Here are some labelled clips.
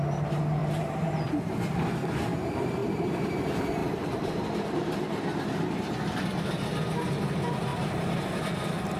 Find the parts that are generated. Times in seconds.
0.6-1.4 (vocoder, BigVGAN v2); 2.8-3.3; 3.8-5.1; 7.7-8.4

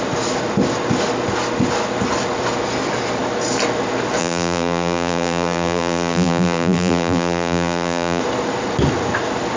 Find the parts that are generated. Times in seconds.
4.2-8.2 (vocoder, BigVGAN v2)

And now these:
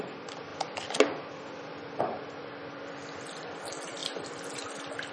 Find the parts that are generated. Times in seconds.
none